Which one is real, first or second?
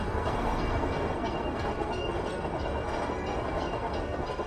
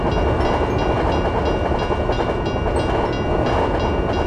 second